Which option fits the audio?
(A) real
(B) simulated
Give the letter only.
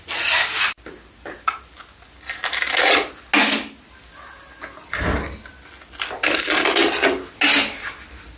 A